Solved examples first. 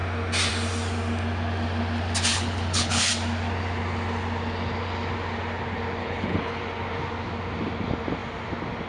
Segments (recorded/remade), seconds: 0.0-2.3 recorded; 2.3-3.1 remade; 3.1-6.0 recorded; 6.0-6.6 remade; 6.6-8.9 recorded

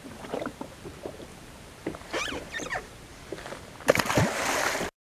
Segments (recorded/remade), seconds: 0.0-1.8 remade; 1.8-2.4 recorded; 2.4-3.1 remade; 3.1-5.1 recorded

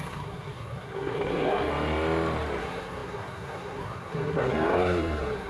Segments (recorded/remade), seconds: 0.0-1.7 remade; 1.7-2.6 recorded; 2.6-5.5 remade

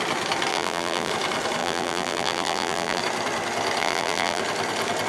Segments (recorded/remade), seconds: 0.0-0.5 recorded; 0.5-1.1 remade; 1.1-1.6 recorded; 1.6-3.0 remade; 3.0-3.8 recorded; 3.8-4.4 remade; 4.4-5.1 recorded

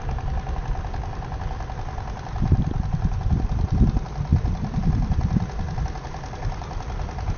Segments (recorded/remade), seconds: 0.0-7.4 recorded

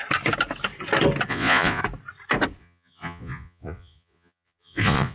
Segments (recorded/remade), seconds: 0.0-1.3 recorded; 1.3-1.8 remade; 1.8-2.6 recorded; 2.6-5.1 remade

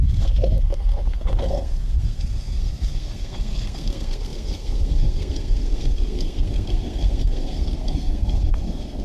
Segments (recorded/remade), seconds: 0.0-9.0 remade

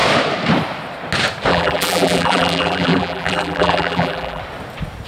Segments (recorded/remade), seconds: 0.0-1.5 recorded; 1.5-4.4 remade; 4.4-5.1 recorded